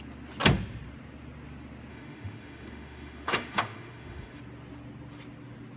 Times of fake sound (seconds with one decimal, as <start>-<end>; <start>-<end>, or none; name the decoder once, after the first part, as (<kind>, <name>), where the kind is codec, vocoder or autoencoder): 1.9-4.4 (autoencoder, DAC-VAE)